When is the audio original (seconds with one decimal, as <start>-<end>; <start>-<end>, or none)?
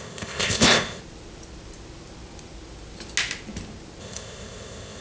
1.0-4.0